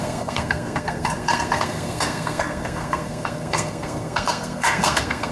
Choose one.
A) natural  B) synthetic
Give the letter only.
B